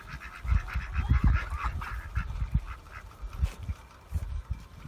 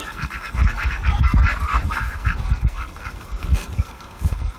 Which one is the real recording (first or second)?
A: first